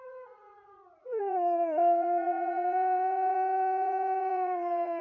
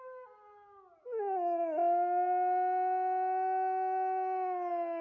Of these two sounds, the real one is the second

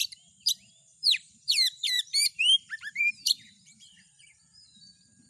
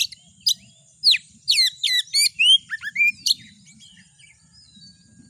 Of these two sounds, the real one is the second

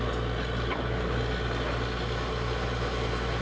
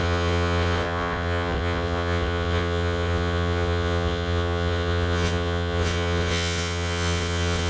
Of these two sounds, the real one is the first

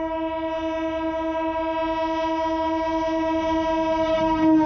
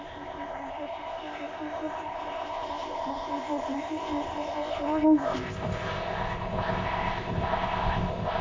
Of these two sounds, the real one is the first